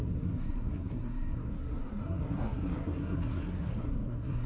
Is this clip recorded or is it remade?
remade